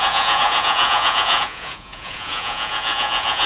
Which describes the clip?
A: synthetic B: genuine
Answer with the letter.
A